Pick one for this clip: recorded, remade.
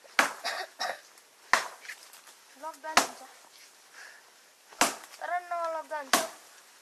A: recorded